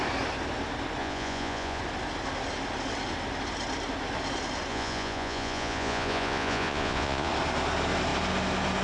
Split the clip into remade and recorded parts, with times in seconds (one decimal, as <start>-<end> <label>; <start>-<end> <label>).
0.0-1.0 recorded; 1.0-1.8 remade; 1.8-4.7 recorded; 4.7-7.3 remade; 7.3-8.8 recorded